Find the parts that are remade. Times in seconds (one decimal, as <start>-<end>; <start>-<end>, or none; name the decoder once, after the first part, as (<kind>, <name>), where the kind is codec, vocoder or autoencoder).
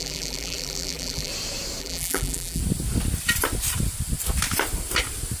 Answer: 0.0-1.3 (vocoder, BigVGAN v2); 1.8-2.6